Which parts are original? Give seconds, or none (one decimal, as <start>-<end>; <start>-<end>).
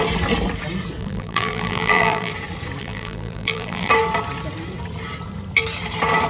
0.0-1.0; 2.3-2.8; 3.9-6.3